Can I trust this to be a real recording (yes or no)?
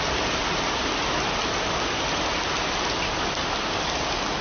yes